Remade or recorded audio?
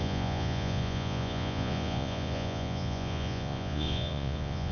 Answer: remade